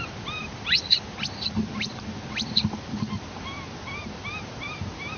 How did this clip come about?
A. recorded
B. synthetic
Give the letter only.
A